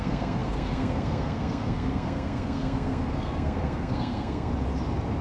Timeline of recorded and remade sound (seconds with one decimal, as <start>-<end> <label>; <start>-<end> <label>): 0.0-4.5 remade; 4.5-5.2 recorded